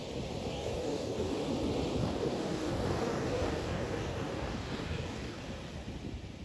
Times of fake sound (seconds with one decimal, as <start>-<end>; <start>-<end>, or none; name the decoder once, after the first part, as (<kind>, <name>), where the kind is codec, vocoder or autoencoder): 0.5-1.5 (codec, DAC); 2.0-5.4